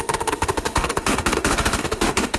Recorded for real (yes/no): no